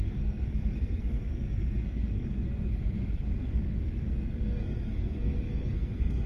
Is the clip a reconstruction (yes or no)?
yes